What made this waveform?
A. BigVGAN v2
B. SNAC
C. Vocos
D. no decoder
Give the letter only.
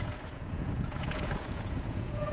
C